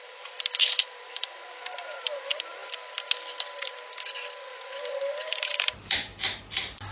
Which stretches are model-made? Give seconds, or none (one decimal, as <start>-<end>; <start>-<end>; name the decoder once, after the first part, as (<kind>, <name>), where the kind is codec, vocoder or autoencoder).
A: 0.0-2.6 (vocoder, BigVGAN v2); 4.5-6.0